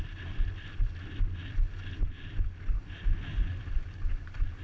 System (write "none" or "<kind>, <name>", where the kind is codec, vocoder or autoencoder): none